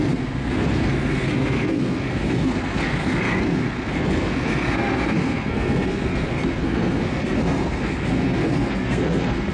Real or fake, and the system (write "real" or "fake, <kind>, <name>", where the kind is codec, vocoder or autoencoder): fake, codec, SNAC